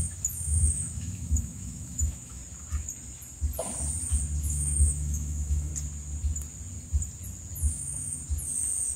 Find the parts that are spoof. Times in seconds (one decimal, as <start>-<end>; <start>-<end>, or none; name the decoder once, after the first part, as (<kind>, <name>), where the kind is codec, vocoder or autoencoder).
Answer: 0.0-2.4 (autoencoder, DAC-VAE); 4.4-5.7; 7.7-8.2